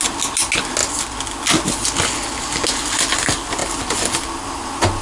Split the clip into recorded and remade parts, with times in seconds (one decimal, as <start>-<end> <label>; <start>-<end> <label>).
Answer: 0.0-5.0 recorded